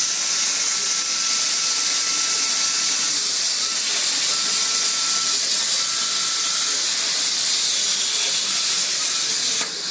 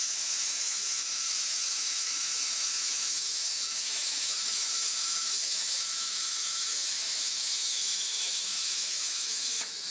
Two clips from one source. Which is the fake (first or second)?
second